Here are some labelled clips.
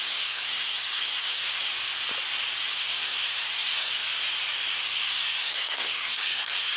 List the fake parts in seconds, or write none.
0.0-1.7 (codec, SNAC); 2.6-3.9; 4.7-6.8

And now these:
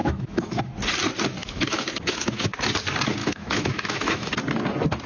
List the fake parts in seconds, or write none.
0.0-0.6 (autoencoder, DAC-VAE); 1.4-2.5; 3.2-4.3